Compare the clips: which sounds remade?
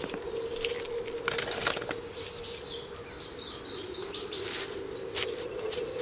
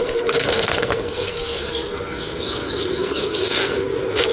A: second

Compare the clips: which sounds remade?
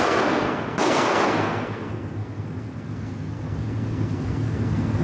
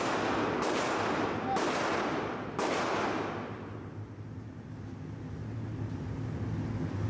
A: first